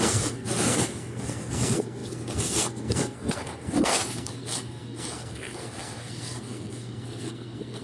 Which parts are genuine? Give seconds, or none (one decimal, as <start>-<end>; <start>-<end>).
none